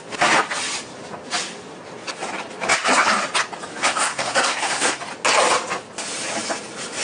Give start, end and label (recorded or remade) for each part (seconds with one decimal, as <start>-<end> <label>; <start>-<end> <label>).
0.0-3.7 recorded; 3.7-5.0 remade; 5.0-7.0 recorded